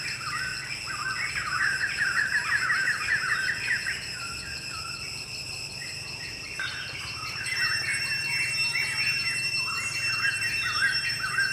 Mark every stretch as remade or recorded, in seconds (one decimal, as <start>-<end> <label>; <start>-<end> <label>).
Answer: 0.0-0.5 remade; 0.5-1.3 recorded; 1.3-11.5 remade